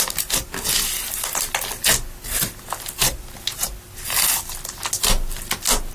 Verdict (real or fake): real